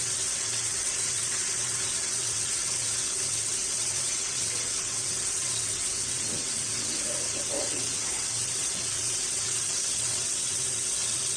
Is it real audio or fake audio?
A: fake